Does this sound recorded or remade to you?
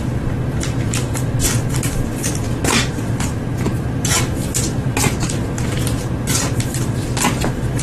recorded